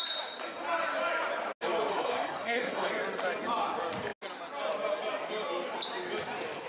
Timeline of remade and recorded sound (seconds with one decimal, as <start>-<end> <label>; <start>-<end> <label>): 0.0-1.9 recorded; 1.9-2.9 remade; 2.9-6.7 recorded